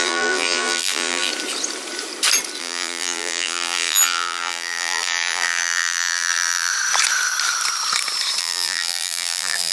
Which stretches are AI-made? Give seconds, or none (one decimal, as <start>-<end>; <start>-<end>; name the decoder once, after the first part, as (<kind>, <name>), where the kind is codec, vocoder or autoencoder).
0.0-1.3 (vocoder, BigVGAN v2); 2.6-6.7; 8.4-9.7